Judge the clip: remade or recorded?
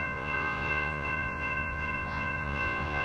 remade